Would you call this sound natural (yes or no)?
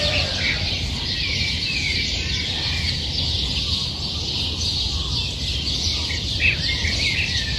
yes